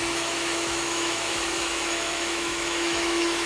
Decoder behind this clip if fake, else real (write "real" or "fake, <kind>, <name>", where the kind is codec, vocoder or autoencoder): fake, autoencoder, DAC-VAE